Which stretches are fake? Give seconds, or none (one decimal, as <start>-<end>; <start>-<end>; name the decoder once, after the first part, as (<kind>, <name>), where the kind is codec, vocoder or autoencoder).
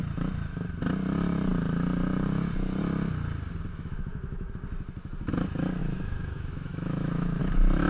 3.7-4.5 (autoencoder, DAC-VAE); 5.8-7.4